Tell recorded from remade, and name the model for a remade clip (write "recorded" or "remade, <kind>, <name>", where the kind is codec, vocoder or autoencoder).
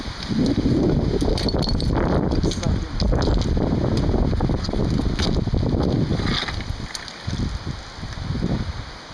recorded